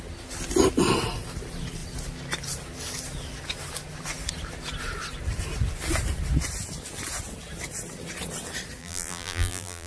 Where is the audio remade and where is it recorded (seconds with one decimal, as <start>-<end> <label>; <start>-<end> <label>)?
0.0-8.8 recorded; 8.8-9.9 remade